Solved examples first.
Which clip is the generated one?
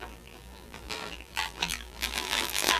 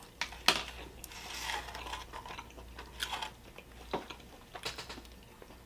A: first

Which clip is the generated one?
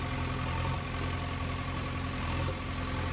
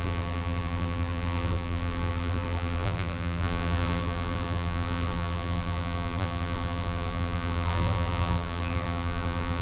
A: second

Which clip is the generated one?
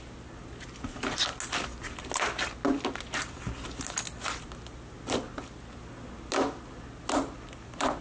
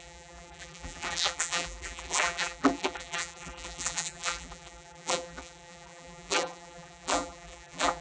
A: second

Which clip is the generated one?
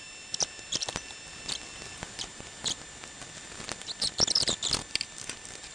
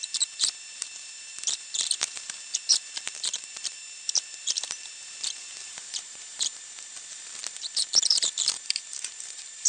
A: second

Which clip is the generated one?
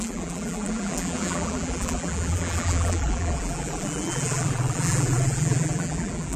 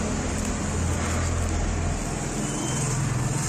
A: first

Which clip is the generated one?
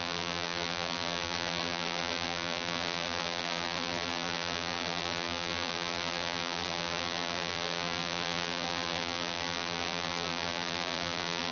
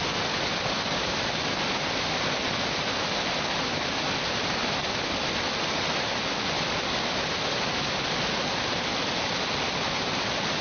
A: first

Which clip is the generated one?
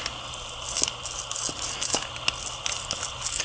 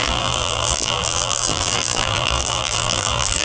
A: second